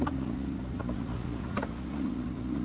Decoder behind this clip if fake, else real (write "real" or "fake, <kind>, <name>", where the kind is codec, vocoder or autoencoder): fake, vocoder, Vocos